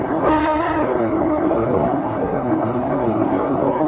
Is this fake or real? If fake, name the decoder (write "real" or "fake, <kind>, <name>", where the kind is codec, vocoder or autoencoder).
fake, codec, SNAC